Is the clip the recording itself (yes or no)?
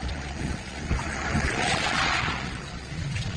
no